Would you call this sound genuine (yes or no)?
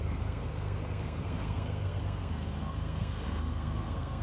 no